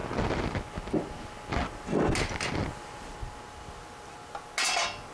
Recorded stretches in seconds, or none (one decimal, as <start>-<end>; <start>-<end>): 0.0-5.1